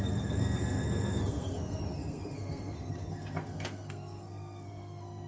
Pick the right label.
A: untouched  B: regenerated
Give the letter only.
B